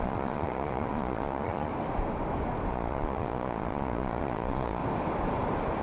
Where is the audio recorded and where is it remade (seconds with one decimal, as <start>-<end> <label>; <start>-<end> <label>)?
0.0-1.7 remade; 1.7-2.7 recorded; 2.7-4.8 remade; 4.8-5.8 recorded